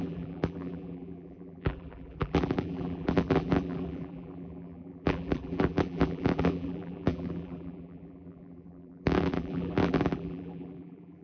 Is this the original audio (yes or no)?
no